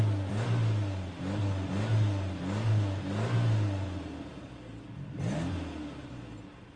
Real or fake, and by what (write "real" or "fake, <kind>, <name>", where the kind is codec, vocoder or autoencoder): real